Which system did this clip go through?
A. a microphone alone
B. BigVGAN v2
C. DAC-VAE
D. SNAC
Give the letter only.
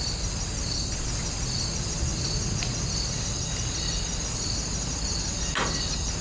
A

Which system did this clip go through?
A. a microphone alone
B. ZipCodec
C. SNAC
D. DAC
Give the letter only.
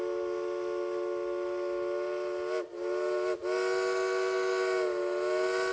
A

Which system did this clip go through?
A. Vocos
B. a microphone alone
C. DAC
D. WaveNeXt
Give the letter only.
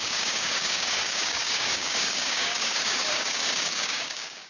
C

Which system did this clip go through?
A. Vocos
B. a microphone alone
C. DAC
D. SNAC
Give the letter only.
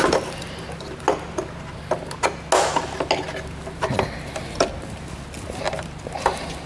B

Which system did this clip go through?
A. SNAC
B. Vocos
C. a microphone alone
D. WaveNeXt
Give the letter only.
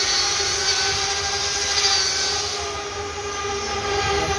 C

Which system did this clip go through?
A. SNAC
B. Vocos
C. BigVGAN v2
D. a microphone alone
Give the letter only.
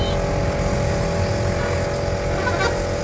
D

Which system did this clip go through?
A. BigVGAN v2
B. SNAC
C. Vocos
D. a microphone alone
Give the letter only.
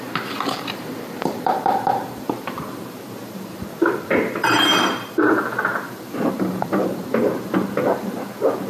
A